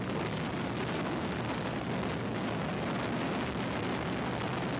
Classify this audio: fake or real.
real